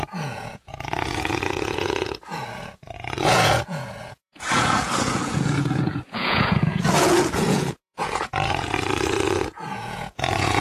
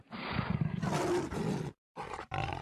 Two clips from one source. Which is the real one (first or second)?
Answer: second